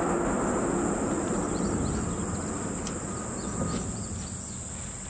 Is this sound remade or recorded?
recorded